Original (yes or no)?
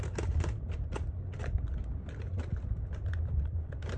yes